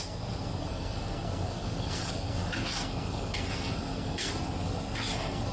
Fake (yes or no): yes